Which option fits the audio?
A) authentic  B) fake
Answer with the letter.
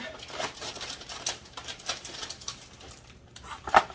B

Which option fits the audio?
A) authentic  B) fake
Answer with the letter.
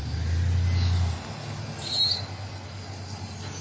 A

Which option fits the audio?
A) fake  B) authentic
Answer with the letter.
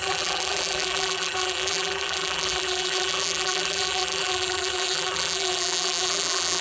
A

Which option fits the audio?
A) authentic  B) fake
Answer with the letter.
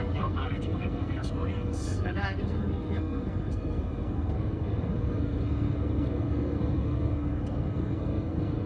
B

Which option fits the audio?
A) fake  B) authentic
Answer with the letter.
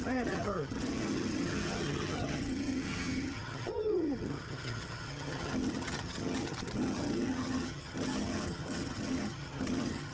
A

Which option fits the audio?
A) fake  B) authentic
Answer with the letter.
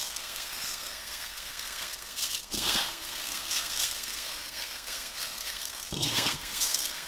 A